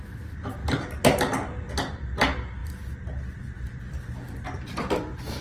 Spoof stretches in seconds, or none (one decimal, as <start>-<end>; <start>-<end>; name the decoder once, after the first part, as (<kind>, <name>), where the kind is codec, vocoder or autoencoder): 0.6-1.7 (vocoder, BigVGAN v2); 2.6-5.4

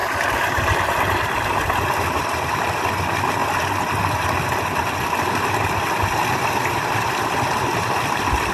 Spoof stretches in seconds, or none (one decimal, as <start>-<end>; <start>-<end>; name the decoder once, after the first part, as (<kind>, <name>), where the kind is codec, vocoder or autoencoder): none